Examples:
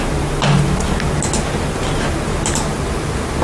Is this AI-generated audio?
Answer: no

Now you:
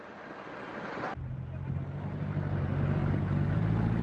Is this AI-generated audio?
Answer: no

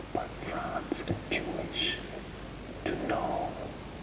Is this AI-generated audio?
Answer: no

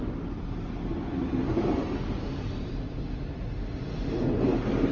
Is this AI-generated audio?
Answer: no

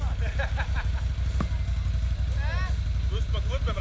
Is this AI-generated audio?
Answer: no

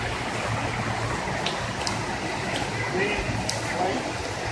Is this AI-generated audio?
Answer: no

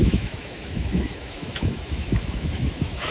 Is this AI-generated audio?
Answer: yes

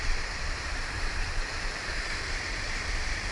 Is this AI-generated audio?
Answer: yes